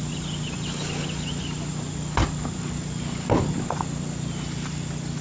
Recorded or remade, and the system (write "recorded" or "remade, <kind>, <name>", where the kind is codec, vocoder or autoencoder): recorded